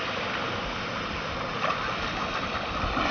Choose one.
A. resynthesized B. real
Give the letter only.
B